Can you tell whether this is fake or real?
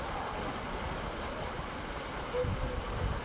real